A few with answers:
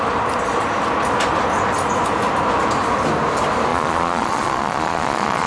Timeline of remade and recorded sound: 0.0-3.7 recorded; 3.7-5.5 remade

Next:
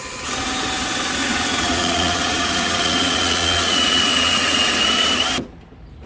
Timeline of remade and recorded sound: 0.0-1.2 recorded; 1.2-4.7 remade; 4.7-6.1 recorded